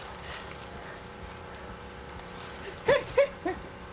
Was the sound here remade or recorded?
recorded